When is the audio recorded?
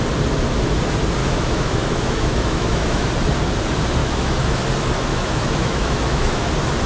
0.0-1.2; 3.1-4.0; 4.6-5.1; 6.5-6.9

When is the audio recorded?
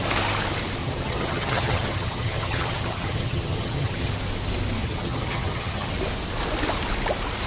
0.0-0.8; 4.1-4.8; 5.9-7.5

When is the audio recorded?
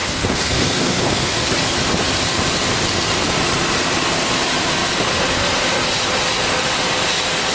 1.5-7.5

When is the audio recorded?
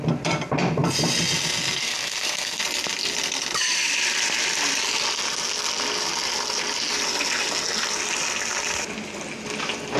0.0-1.8; 2.6-10.0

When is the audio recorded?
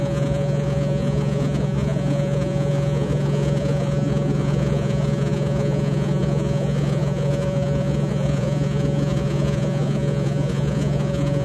none